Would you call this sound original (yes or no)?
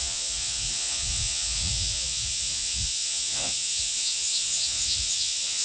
no